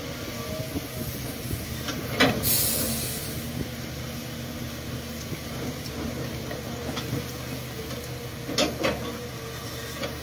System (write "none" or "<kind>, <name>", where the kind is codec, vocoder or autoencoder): none